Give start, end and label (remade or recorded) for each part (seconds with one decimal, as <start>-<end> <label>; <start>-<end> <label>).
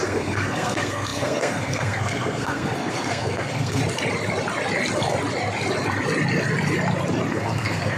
0.0-3.8 remade; 3.8-7.3 recorded; 7.3-8.0 remade